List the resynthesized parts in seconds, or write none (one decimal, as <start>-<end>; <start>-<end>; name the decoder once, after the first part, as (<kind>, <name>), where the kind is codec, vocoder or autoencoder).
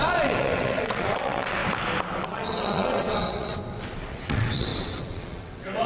0.0-1.6 (vocoder, WaveNeXt); 2.2-3.5; 4.1-5.9